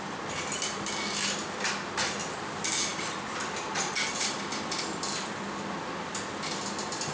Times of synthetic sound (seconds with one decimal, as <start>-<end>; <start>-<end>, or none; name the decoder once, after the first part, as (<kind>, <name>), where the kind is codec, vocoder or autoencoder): none